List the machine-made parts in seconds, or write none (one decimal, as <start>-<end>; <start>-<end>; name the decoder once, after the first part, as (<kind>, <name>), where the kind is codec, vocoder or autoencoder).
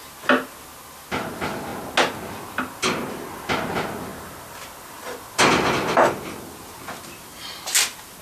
4.1-5.3 (vocoder, BigVGAN v2)